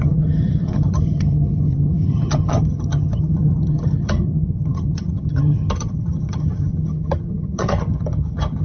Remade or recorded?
remade